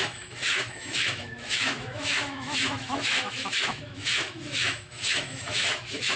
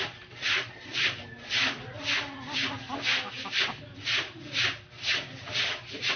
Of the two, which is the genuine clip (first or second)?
second